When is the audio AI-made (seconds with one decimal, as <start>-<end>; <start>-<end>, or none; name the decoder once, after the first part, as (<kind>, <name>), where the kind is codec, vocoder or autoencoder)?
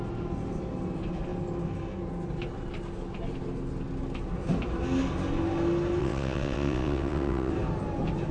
6.0-7.5 (vocoder, WaveNeXt)